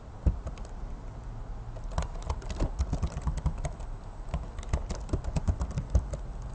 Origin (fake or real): real